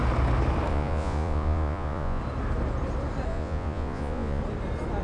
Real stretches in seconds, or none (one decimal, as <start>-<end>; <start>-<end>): 0.0-0.7; 2.2-3.3; 4.4-5.0